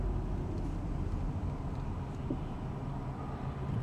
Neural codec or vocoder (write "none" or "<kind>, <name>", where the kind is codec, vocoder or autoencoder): none